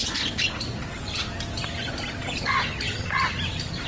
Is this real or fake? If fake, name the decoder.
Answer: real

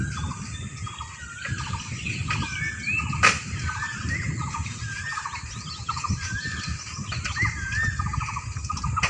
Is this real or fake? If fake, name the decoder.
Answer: real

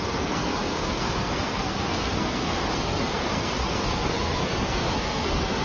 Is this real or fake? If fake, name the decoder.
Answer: fake, codec, SNAC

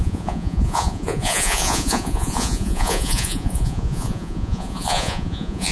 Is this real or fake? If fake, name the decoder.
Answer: fake, vocoder, Vocos